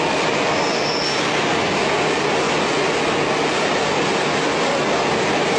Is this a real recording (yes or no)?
yes